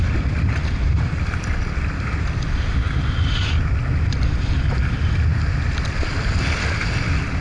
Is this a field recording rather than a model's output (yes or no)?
yes